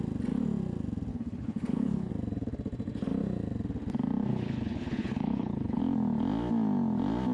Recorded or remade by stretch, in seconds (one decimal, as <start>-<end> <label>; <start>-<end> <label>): 0.0-1.1 recorded; 1.1-2.1 remade; 2.1-4.3 recorded; 4.3-5.8 remade; 5.8-7.3 recorded